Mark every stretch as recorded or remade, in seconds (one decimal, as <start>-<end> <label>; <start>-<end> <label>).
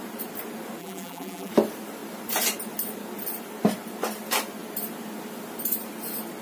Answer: 0.0-0.8 recorded; 0.8-1.5 remade; 1.5-6.4 recorded